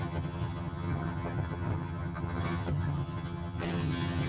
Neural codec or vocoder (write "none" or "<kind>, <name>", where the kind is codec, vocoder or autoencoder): vocoder, HiFi-GAN